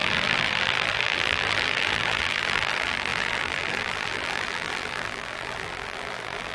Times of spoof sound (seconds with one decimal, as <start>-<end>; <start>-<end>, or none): 0.0-6.5